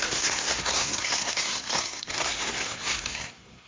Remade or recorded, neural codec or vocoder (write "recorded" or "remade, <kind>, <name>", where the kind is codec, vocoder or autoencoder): remade, codec, SNAC